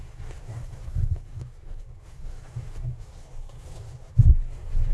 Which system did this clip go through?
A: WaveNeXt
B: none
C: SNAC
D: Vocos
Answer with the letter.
C